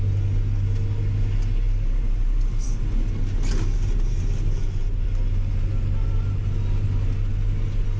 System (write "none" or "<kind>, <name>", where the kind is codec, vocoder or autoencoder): none